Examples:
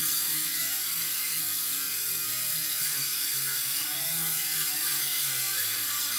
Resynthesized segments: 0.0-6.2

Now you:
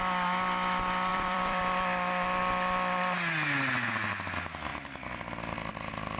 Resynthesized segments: 1.1-1.6